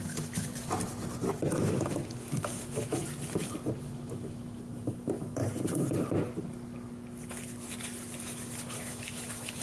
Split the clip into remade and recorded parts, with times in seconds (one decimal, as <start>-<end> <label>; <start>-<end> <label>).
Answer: 0.0-0.5 remade; 0.5-1.5 recorded; 1.5-3.0 remade; 3.0-3.8 recorded; 3.8-5.4 remade; 5.4-8.2 recorded; 8.2-9.6 remade